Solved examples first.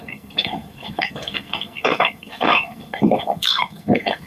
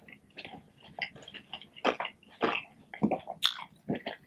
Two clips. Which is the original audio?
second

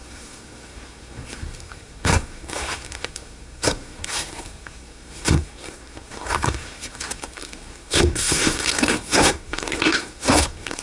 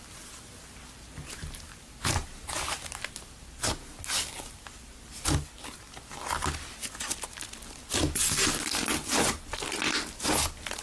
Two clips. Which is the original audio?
second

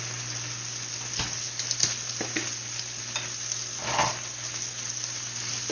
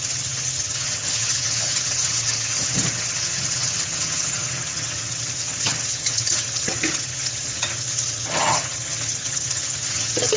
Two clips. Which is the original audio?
first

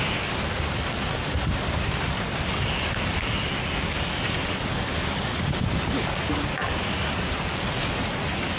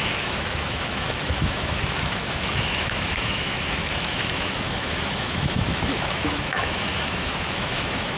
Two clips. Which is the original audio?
first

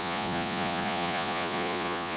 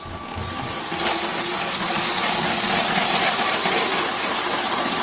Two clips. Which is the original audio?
second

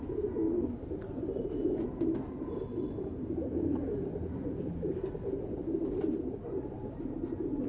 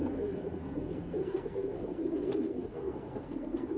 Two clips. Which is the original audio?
first